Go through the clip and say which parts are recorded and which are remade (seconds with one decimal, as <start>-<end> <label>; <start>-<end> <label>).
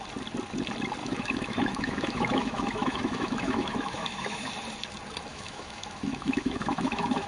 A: 0.0-1.0 recorded; 1.0-4.5 remade; 4.5-5.3 recorded; 5.3-7.3 remade